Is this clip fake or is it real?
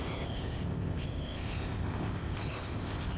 fake